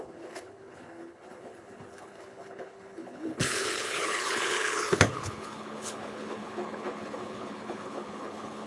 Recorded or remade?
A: remade